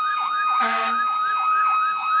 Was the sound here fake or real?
fake